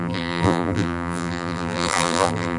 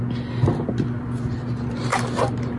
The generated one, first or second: first